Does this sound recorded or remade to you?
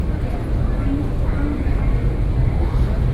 recorded